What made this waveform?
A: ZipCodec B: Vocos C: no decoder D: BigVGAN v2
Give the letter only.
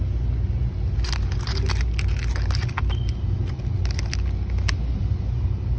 C